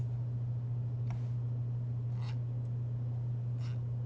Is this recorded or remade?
recorded